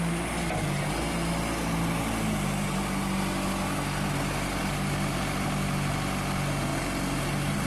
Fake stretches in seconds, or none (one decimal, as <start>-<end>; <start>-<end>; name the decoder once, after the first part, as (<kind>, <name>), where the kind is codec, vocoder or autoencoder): none